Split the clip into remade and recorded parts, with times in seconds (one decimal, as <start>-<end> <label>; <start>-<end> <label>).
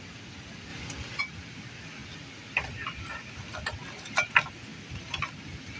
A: 0.0-5.8 recorded